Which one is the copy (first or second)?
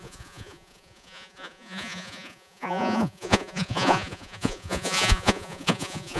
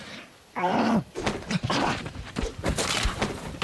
first